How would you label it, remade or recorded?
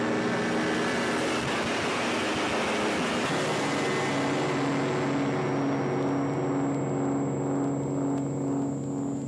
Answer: recorded